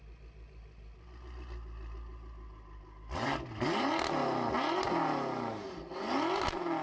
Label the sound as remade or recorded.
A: recorded